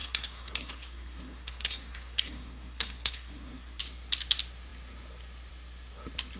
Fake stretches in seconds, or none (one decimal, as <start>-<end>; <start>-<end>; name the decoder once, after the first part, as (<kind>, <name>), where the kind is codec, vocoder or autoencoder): 0.0-3.8 (codec, SNAC)